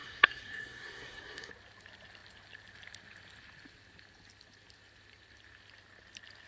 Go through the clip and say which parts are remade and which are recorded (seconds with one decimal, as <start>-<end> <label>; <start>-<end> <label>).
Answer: 0.0-1.5 remade; 1.5-6.5 recorded